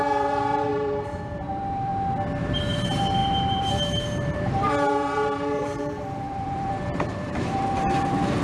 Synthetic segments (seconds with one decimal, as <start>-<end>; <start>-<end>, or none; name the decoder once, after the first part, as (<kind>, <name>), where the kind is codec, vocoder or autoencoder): 0.0-1.9 (vocoder, BigVGAN v2); 2.4-8.4